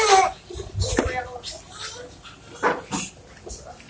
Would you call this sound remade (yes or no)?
no